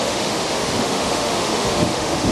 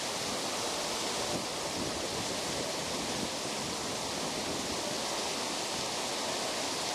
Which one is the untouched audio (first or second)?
second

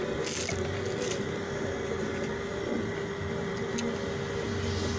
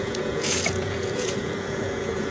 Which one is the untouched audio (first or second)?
first